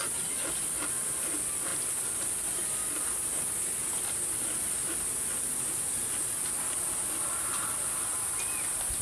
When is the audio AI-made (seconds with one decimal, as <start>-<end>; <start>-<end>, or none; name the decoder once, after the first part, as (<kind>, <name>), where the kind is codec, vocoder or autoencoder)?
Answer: none